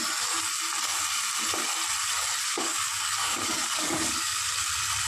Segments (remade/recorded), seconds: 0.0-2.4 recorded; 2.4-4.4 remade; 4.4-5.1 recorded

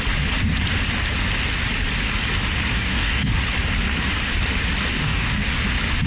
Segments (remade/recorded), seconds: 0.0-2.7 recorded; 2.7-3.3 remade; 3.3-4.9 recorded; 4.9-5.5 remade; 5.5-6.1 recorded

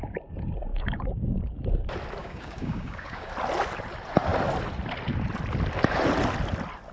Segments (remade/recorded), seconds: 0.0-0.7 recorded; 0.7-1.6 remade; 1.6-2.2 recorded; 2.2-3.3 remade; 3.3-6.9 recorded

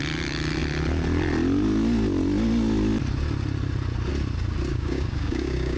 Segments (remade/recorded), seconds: 0.0-4.7 recorded; 4.7-5.8 remade

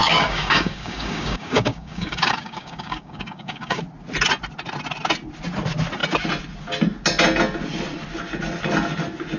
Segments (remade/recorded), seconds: 0.0-3.8 remade; 3.8-9.4 recorded